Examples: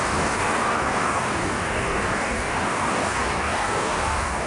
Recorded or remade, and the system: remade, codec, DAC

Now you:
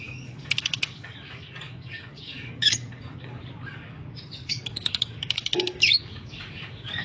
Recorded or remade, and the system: remade, codec, DAC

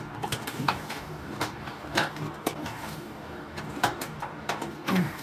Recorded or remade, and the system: remade, codec, DAC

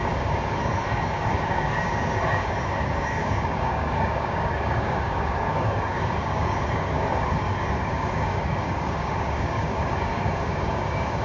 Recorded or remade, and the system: remade, codec, DAC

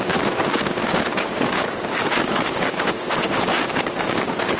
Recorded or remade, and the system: remade, codec, DAC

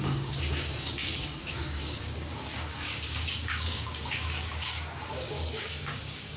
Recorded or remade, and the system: remade, codec, DAC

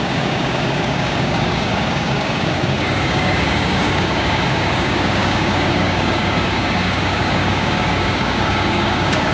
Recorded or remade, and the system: remade, codec, DAC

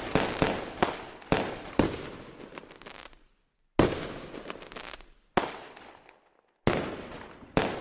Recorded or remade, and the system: recorded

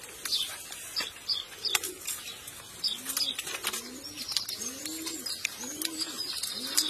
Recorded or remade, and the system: recorded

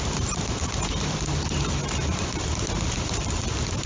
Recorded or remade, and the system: recorded